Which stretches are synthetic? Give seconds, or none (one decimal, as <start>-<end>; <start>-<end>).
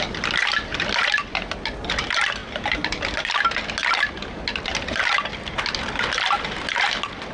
none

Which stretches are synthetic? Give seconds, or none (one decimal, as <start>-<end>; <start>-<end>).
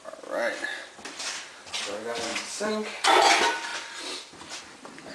2.3-3.3